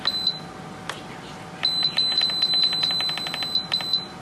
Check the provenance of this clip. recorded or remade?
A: recorded